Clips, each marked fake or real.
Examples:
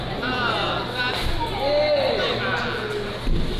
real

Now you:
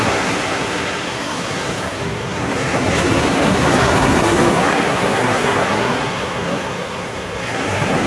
fake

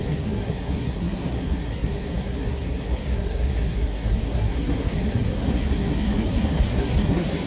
fake